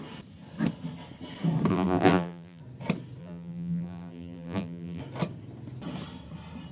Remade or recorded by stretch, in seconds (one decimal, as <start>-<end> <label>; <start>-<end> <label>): 0.0-1.7 recorded; 1.7-2.6 remade; 2.6-3.2 recorded; 3.2-5.0 remade; 5.0-6.7 recorded